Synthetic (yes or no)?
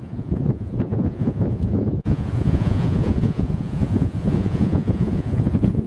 yes